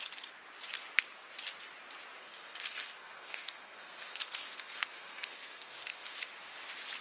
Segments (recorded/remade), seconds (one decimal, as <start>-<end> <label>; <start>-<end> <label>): 0.0-2.2 recorded; 2.2-6.1 remade; 6.1-7.0 recorded